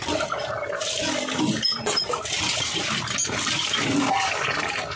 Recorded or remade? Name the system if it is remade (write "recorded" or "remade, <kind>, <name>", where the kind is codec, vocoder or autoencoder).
recorded